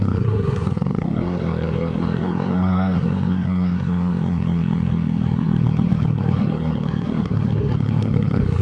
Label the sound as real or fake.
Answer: fake